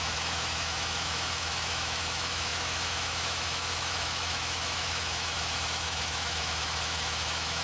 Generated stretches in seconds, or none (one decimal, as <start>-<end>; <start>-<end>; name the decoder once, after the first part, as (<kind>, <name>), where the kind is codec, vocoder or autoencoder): 0.0-7.6 (autoencoder, DAC-VAE)